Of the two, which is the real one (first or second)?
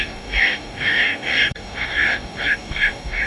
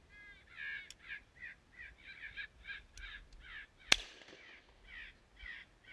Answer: second